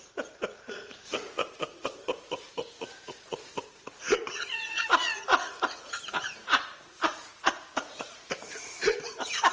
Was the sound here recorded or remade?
remade